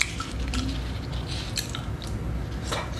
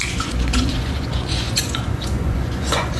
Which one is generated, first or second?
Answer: second